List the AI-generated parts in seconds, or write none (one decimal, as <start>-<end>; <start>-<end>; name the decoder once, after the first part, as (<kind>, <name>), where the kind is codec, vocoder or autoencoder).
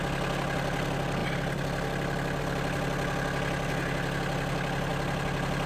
none